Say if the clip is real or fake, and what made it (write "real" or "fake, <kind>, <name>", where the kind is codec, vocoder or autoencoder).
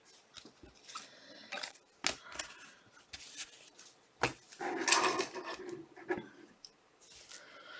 real